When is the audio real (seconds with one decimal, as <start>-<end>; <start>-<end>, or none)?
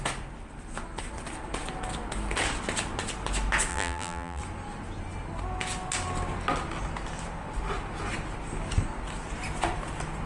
0.0-3.7; 4.4-10.3